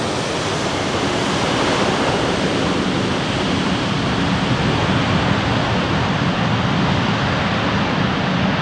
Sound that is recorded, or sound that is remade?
recorded